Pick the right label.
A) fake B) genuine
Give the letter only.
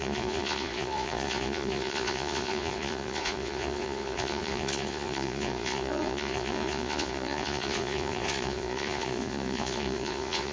A